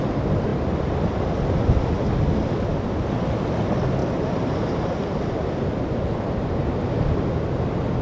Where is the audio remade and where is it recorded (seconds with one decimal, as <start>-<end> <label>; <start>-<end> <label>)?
0.0-4.0 recorded; 4.0-4.9 remade; 4.9-8.0 recorded